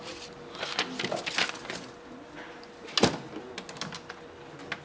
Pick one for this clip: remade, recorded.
recorded